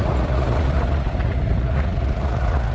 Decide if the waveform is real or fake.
fake